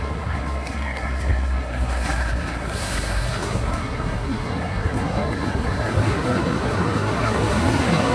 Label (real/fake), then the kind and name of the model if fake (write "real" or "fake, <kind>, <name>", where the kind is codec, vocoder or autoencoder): fake, codec, SNAC